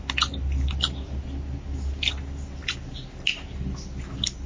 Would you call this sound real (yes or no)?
yes